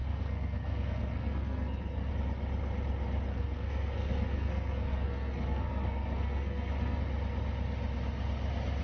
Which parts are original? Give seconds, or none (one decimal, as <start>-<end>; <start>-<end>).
2.1-3.3; 7.0-8.8